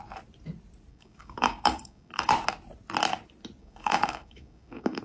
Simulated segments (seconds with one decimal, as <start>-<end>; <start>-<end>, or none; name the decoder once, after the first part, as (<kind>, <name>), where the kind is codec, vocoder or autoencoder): 0.9-2.3 (codec, DAC); 3.6-5.0